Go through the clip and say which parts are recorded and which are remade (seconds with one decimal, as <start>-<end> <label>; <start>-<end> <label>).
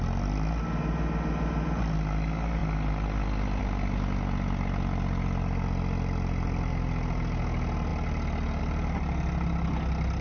0.0-10.2 recorded